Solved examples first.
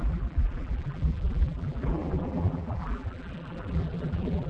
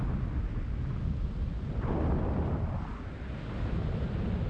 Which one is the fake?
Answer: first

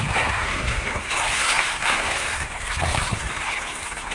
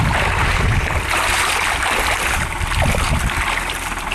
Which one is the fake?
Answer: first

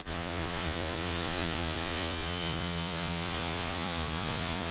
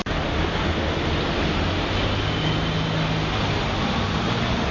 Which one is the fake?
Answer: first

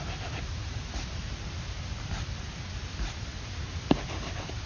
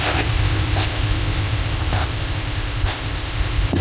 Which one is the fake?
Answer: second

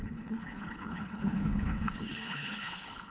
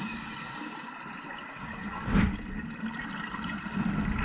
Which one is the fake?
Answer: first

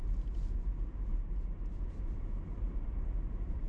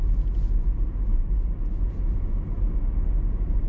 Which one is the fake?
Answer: first